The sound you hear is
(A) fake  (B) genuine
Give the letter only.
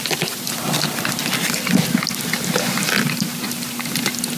B